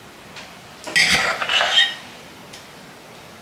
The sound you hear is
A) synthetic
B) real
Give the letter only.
B